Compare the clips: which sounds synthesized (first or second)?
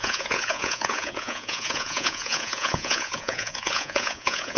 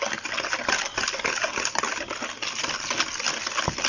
first